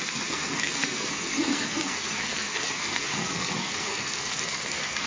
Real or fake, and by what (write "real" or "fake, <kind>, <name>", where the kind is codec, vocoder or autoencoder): fake, codec, SNAC